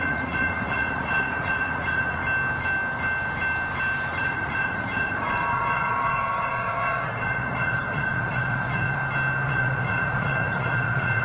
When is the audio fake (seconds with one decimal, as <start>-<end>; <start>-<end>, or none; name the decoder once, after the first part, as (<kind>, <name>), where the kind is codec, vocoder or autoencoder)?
0.0-2.2 (vocoder, Vocos); 4.2-9.0; 9.5-11.2